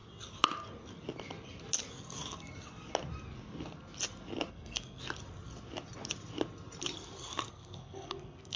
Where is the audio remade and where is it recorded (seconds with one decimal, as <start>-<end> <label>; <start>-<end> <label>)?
0.0-4.5 recorded; 4.5-5.0 remade; 5.0-7.5 recorded; 7.5-8.6 remade